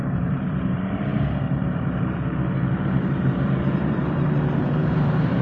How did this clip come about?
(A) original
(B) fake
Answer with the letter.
B